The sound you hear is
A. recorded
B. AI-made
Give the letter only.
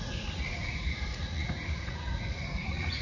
B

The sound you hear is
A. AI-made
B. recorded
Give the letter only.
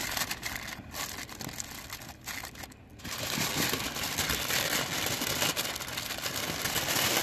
B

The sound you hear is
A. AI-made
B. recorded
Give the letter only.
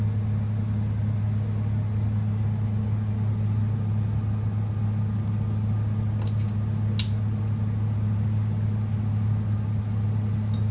B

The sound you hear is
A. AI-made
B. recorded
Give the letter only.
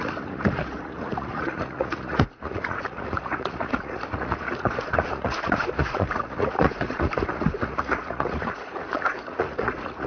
A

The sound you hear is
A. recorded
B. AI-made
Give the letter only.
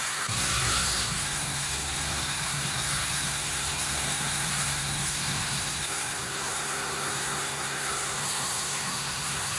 B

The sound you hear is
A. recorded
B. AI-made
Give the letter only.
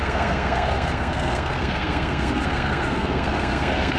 B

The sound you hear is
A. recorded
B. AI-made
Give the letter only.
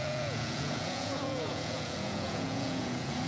B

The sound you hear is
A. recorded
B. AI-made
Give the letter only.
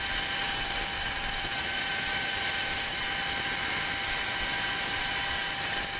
A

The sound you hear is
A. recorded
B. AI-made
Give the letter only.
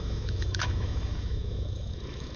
B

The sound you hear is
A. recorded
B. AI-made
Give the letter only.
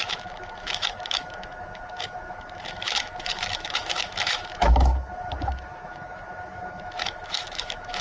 B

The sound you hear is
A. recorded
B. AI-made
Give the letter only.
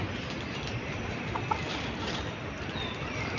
A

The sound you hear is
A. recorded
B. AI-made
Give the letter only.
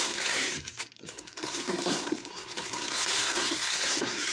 B